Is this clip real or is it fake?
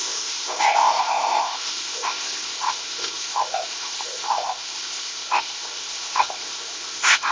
fake